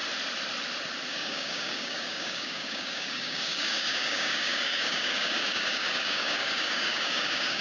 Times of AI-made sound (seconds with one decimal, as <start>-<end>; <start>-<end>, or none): 1.1-7.6